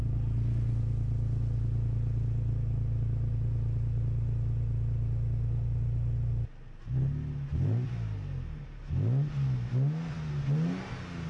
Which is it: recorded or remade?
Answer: recorded